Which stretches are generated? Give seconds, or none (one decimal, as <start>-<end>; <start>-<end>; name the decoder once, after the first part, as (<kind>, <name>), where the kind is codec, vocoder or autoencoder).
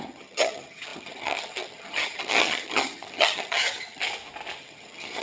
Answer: 0.0-4.0 (vocoder, HiFi-GAN); 4.6-5.2